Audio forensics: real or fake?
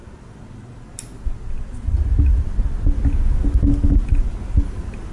real